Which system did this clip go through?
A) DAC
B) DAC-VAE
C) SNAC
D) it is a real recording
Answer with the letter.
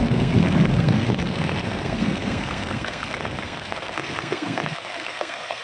C